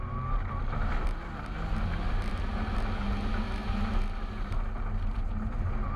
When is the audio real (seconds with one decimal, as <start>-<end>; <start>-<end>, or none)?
0.0-0.6; 2.3-6.0